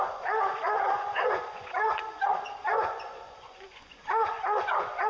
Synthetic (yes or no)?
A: yes